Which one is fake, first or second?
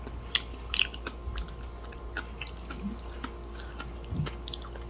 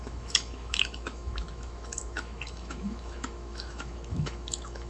second